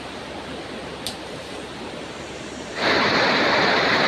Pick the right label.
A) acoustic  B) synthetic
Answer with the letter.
B